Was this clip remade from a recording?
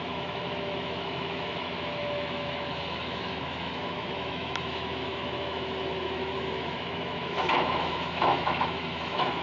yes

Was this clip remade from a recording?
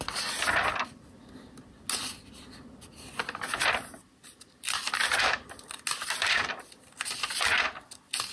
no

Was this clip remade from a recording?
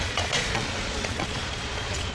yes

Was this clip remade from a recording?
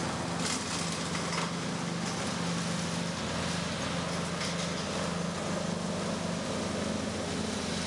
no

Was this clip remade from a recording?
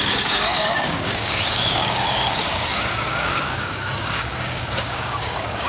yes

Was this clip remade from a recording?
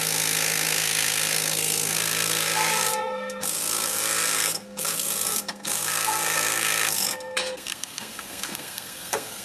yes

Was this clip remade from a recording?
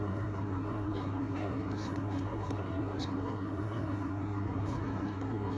yes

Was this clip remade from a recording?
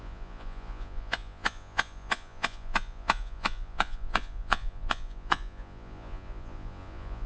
yes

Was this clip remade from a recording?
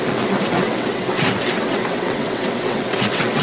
yes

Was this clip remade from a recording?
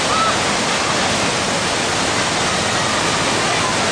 no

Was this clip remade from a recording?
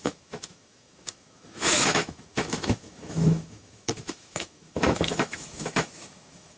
yes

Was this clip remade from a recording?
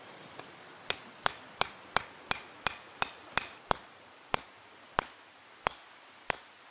no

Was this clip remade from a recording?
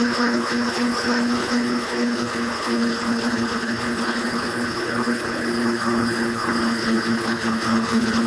yes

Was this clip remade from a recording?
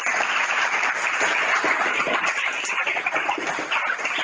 no